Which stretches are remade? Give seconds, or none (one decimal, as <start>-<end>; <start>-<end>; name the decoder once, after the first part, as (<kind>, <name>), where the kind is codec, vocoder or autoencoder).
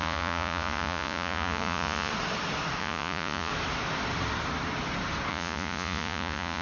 0.0-2.1 (vocoder, Vocos); 2.8-3.5; 5.3-6.6